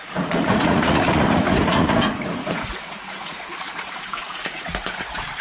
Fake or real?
fake